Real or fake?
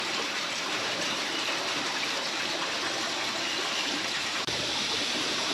fake